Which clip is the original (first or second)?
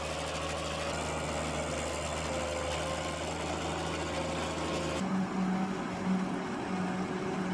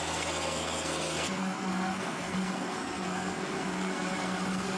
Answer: first